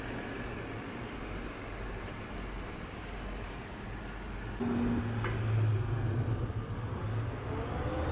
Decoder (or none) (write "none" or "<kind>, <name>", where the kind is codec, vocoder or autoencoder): none